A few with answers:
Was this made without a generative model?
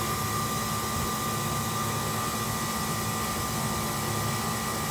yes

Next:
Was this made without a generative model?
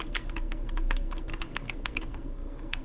no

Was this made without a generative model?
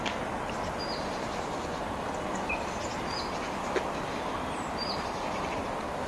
yes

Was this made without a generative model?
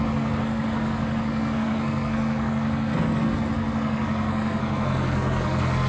no